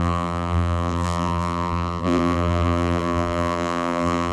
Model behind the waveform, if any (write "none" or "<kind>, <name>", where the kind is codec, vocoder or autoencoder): vocoder, BigVGAN v2